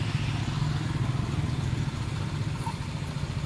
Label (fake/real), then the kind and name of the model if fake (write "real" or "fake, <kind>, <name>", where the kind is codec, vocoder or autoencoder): real